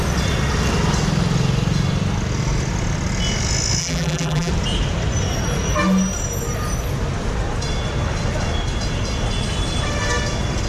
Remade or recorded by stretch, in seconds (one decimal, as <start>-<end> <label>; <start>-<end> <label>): 0.0-3.8 recorded; 3.8-4.5 remade; 4.5-10.7 recorded